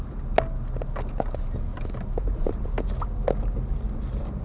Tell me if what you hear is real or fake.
real